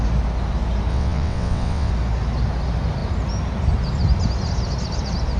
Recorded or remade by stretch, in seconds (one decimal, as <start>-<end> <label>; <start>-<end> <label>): 0.0-0.9 recorded; 0.9-1.9 remade; 1.9-5.4 recorded